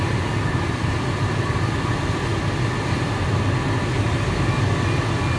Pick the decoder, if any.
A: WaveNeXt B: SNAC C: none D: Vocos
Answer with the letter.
C